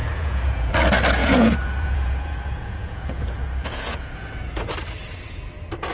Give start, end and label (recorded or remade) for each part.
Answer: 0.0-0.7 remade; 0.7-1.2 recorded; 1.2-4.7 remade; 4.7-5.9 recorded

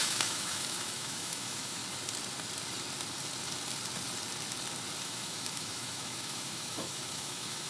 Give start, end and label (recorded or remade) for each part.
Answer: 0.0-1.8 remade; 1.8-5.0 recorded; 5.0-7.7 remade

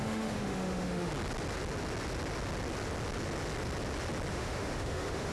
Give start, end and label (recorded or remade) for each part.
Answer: 0.0-1.1 remade; 1.1-4.3 recorded; 4.3-5.3 remade